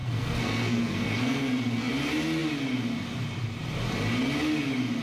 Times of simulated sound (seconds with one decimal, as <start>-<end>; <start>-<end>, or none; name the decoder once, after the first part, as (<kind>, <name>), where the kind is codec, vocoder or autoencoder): 0.0-1.9 (codec, SNAC)